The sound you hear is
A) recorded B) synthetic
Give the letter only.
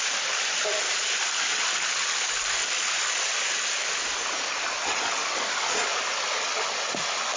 A